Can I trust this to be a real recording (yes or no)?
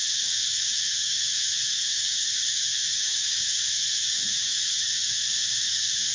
no